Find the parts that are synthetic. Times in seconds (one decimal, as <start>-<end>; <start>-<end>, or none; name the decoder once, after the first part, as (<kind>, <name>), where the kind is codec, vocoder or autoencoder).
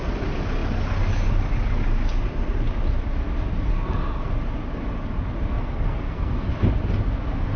3.7-4.3 (codec, SNAC); 5.5-6.5